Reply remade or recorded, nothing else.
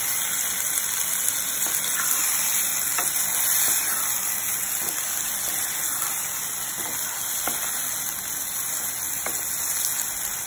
recorded